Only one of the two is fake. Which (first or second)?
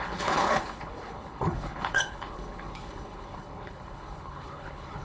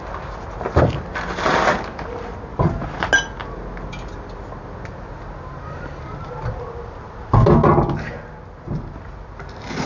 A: first